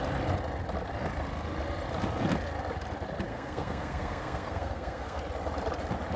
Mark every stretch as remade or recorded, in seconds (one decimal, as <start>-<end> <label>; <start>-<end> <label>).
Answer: 0.0-3.3 recorded; 3.3-5.2 remade; 5.2-6.2 recorded